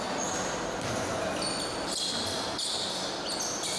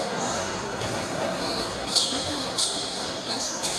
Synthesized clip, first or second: second